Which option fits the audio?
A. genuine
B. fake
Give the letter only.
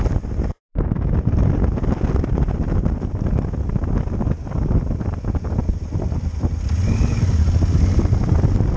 A